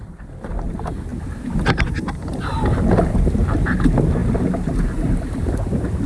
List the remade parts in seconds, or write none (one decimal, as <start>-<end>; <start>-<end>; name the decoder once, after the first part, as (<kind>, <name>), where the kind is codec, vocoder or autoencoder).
none